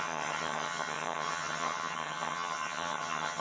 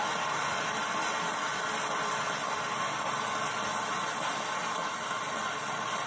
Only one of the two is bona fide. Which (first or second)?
second